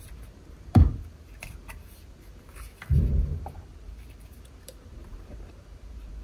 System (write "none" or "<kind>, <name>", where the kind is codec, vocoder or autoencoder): vocoder, BigVGAN v2